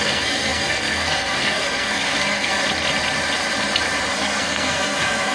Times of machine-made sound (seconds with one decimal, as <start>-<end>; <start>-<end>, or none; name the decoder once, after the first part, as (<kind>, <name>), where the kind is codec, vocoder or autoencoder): 0.0-2.6 (codec, SNAC); 4.1-5.3